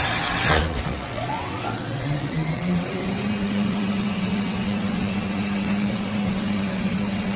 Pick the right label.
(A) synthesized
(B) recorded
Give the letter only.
A